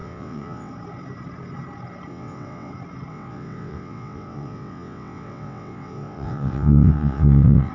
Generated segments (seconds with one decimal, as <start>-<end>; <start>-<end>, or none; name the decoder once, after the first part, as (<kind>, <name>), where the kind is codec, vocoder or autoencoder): 0.0-0.7 (vocoder, WaveNeXt); 2.1-2.7; 3.1-7.7